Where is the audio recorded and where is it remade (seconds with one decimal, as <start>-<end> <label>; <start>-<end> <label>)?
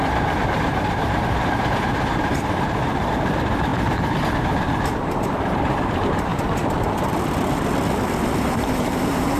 0.0-3.7 remade; 3.7-4.4 recorded; 4.4-6.3 remade; 6.3-8.6 recorded; 8.6-9.4 remade